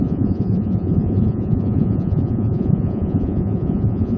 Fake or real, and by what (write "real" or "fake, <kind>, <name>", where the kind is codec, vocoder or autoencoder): fake, vocoder, Vocos